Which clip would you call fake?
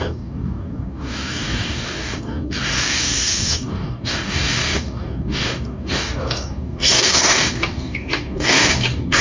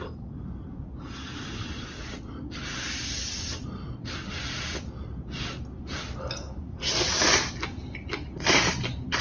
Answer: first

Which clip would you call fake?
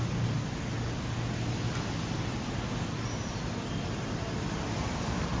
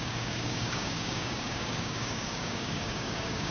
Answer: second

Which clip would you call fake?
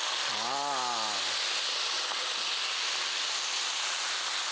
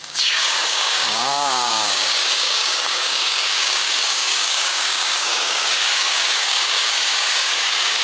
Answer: second